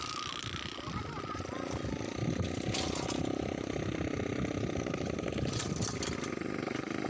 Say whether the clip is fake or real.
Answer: real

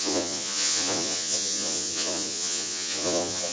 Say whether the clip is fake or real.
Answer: fake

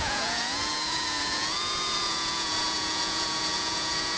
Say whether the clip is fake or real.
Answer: fake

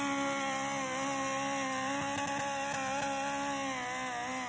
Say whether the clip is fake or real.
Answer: real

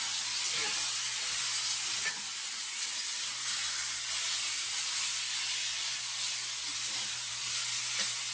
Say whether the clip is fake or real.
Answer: real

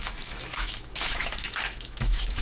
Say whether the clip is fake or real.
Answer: fake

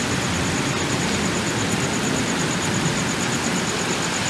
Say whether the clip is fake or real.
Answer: real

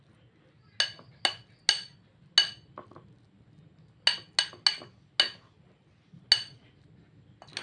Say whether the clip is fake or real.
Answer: real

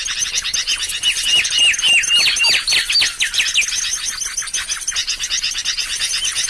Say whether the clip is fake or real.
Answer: real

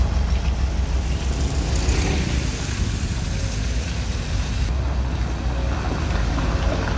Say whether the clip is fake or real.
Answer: real